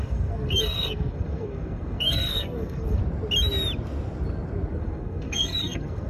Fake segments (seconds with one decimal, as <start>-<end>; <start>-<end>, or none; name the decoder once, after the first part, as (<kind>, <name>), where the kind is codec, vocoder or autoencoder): 0.0-3.0 (codec, SNAC); 4.7-6.1